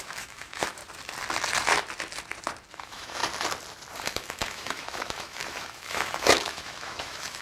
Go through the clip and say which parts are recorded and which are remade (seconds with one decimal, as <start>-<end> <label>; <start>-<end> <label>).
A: 0.0-0.8 remade; 0.8-2.7 recorded; 2.7-3.2 remade; 3.2-4.1 recorded; 4.1-7.4 remade